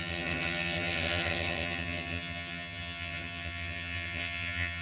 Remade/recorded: remade